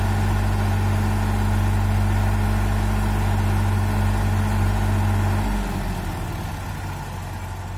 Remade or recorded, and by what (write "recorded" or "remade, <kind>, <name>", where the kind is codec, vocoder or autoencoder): recorded